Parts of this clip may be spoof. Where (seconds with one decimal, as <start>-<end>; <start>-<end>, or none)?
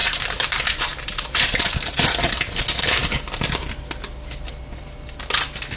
0.0-1.2